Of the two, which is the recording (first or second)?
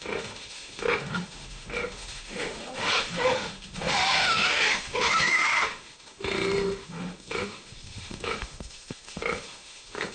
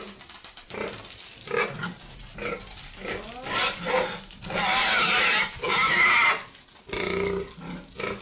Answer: second